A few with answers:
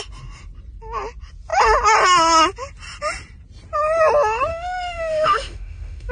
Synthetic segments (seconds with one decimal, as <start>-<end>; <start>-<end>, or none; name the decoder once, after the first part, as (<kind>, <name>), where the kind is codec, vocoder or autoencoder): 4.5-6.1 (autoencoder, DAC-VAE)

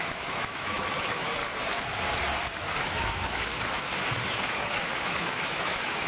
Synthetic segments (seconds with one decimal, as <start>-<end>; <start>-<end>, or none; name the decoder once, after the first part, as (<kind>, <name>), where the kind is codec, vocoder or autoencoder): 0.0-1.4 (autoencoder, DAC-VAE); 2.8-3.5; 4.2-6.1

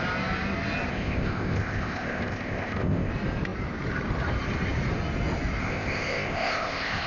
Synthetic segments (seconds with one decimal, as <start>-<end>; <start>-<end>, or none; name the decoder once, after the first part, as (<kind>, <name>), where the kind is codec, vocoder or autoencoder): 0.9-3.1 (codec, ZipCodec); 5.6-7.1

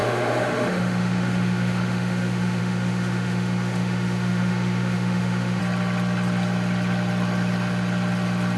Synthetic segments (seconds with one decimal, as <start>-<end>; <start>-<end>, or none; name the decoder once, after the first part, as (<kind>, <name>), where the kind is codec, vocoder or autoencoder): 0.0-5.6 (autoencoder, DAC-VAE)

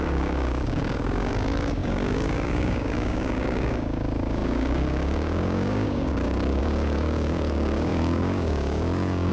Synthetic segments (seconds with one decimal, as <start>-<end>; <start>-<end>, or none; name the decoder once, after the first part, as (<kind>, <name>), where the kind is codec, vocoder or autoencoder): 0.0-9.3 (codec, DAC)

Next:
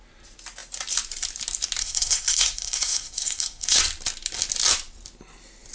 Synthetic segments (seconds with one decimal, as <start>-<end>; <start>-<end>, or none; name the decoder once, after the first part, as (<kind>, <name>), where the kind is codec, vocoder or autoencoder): 1.8-3.8 (codec, SNAC)

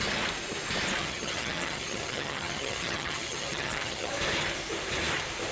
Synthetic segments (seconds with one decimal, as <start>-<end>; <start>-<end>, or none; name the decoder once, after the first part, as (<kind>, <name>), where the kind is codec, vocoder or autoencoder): 1.0-4.1 (vocoder, HiFi-GAN)

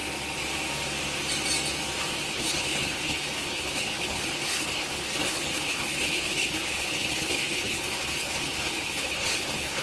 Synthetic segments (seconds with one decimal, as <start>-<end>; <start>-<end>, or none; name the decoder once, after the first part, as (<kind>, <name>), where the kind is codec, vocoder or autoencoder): 2.3-9.8 (codec, HILCodec)